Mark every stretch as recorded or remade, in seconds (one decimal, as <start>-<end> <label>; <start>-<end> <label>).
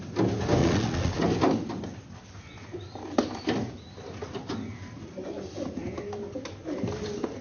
0.0-0.6 recorded; 0.6-1.2 remade; 1.2-7.4 recorded